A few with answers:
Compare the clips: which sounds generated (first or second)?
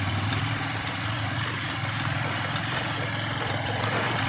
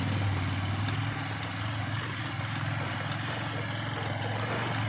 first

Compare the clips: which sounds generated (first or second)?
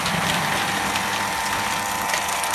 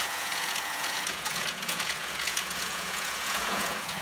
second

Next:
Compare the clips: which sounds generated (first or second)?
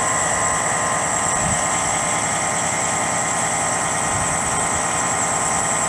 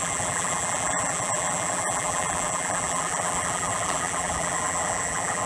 second